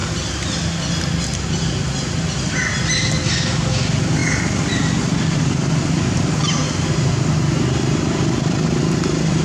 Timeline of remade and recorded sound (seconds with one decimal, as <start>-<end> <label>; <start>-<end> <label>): 0.0-1.2 recorded; 1.2-6.6 remade; 6.6-8.8 recorded; 8.8-9.4 remade